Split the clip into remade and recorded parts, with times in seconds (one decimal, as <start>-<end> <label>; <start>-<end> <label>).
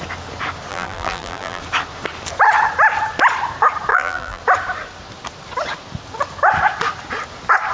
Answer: 0.0-0.7 recorded; 0.7-1.6 remade; 1.6-3.9 recorded; 3.9-4.4 remade; 4.4-7.7 recorded